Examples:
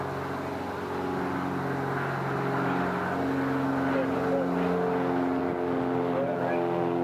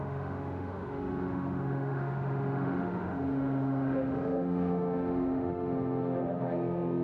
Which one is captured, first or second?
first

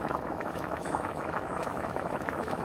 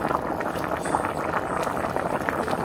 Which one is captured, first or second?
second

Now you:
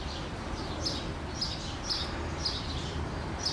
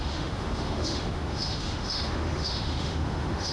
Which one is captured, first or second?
first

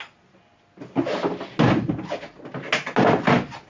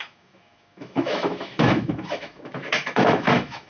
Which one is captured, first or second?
first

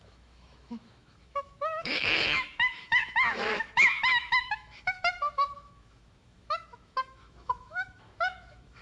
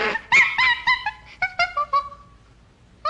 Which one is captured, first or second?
second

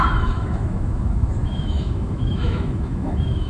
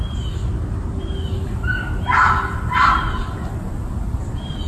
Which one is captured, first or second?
second